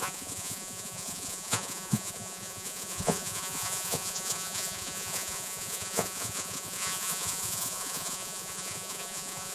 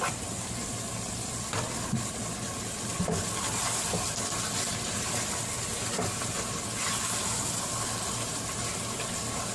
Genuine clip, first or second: second